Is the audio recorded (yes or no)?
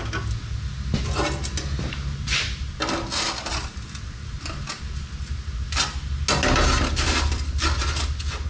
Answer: yes